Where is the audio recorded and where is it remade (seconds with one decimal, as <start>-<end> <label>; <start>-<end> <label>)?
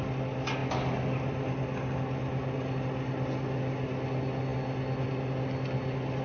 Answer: 0.0-6.2 recorded